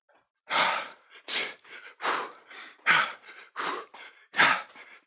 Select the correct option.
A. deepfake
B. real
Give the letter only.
A